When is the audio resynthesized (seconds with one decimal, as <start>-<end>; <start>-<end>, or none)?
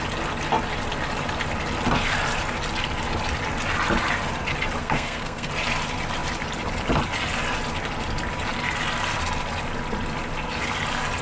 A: 4.8-5.5